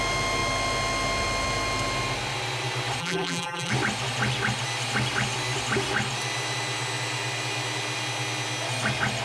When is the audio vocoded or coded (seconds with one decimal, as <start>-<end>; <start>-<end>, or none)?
3.0-3.7